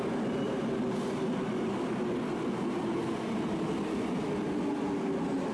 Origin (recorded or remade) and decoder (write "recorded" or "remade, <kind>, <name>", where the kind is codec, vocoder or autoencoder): recorded